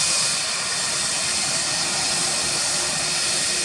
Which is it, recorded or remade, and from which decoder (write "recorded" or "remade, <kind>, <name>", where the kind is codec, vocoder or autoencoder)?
recorded